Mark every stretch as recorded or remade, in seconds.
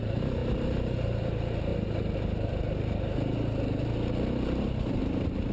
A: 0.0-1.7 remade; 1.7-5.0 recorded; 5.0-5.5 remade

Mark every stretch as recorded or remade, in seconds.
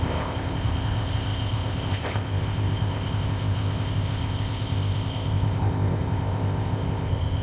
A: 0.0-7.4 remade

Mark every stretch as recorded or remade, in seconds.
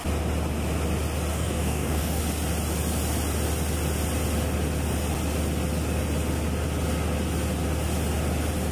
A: 0.0-1.3 recorded; 1.3-2.2 remade; 2.2-8.7 recorded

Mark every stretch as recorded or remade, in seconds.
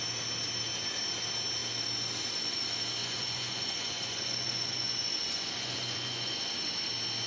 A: 0.0-3.0 recorded; 3.0-6.5 remade; 6.5-7.3 recorded